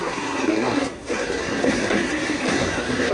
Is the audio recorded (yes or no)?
no